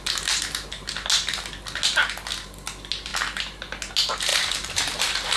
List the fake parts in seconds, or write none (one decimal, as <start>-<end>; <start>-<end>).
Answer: 4.3-5.4